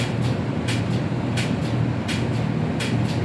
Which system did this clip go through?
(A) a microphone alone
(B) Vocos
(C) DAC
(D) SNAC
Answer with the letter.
A